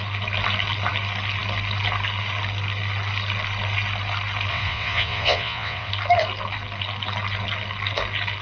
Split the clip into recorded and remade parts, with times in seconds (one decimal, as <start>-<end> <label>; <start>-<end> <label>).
0.0-4.5 recorded; 4.5-5.9 remade; 5.9-8.4 recorded